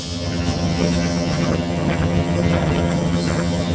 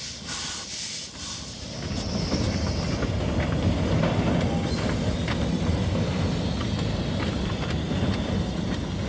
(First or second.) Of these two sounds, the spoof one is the first